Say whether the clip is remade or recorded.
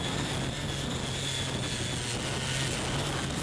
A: recorded